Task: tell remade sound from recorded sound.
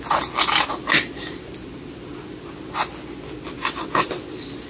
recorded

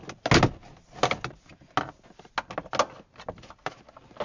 recorded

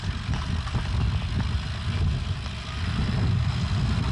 recorded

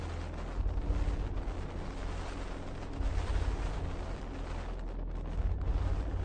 recorded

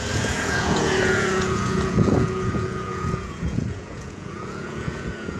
remade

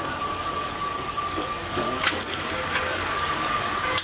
remade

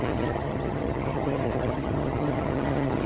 remade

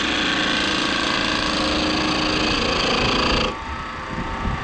recorded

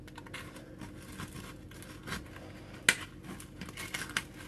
recorded